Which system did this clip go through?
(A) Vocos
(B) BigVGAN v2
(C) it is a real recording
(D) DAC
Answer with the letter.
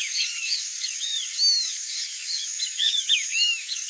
D